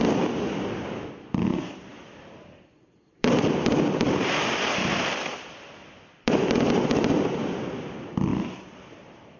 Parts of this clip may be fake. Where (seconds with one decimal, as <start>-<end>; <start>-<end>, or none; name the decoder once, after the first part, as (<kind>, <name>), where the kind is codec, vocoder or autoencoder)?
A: 1.9-6.5 (vocoder, BigVGAN v2); 8.3-9.4